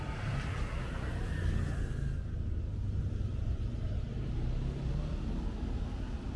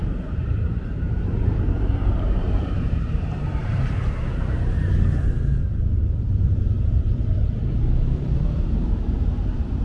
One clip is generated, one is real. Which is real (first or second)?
first